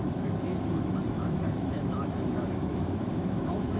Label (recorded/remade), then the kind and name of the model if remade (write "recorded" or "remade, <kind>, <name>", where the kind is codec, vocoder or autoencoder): remade, autoencoder, DAC-VAE